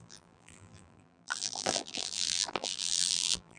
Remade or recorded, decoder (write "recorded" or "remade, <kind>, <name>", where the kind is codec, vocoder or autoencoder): remade, vocoder, BigVGAN v2